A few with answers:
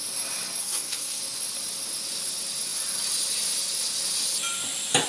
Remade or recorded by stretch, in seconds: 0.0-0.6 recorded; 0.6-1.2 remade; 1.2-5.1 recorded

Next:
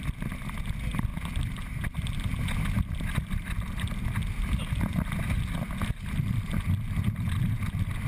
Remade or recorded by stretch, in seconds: 0.0-1.1 recorded; 1.1-2.3 remade; 2.3-8.1 recorded

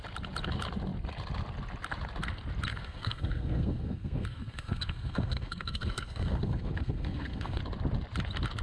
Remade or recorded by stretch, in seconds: 0.0-2.7 recorded; 2.7-7.6 remade; 7.6-8.6 recorded

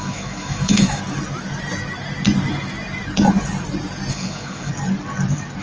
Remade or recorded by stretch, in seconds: 0.0-1.0 remade; 1.0-4.1 recorded; 4.1-4.7 remade; 4.7-5.6 recorded

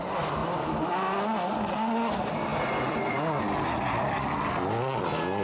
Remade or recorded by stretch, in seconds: 0.0-5.4 recorded